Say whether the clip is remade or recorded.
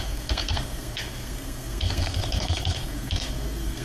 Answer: remade